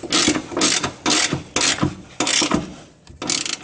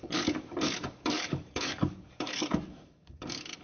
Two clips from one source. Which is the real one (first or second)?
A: first